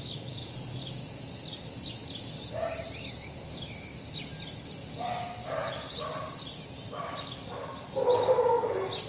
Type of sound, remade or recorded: recorded